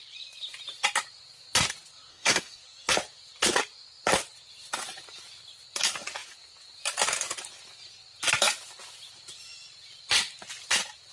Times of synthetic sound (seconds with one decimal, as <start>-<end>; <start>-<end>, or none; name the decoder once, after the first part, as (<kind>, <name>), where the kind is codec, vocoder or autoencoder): 2.1-2.6 (codec, SNAC)